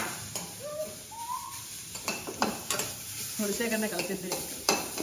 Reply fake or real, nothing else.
fake